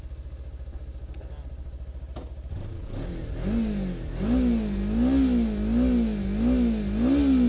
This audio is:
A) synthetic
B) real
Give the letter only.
B